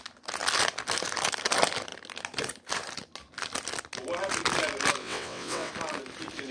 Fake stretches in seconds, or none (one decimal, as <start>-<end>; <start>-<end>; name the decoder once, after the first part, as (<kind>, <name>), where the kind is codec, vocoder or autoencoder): 5.0-5.7 (vocoder, WaveNeXt)